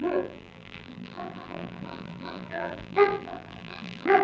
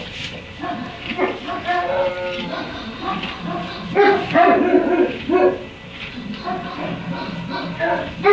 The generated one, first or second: first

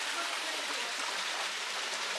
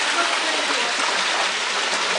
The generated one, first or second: first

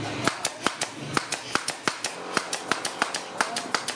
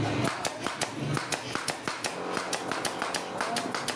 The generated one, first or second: first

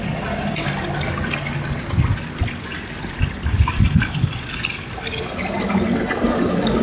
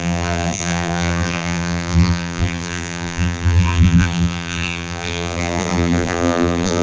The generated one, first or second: second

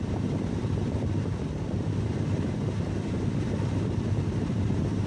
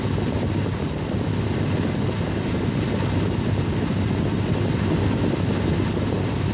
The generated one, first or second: first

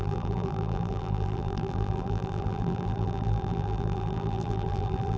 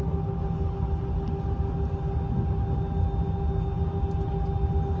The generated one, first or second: first